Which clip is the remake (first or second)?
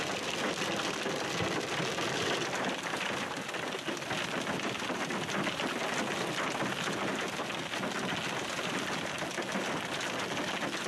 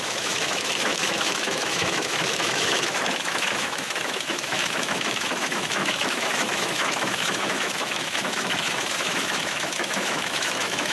second